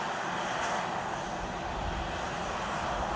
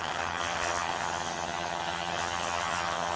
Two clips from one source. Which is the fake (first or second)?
second